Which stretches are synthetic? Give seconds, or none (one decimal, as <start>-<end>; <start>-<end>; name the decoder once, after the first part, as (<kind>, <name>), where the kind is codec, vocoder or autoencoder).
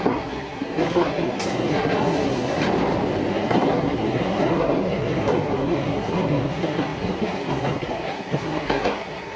0.0-2.6 (codec, SNAC); 3.3-9.4